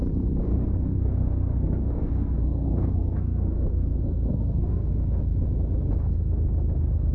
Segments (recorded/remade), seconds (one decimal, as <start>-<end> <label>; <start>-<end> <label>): 0.0-0.5 recorded; 0.5-4.8 remade; 4.8-7.1 recorded